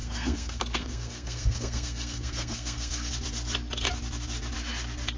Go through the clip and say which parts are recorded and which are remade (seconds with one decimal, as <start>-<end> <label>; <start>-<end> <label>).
0.0-3.1 remade; 3.1-5.2 recorded